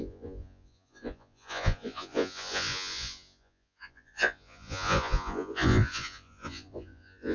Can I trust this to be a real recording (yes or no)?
no